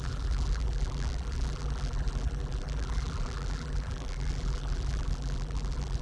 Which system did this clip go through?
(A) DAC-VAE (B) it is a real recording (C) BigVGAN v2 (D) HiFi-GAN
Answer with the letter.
C